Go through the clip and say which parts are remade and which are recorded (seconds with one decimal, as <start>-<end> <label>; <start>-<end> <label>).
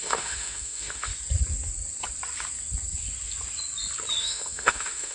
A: 0.0-1.1 remade; 1.1-4.2 recorded; 4.2-5.1 remade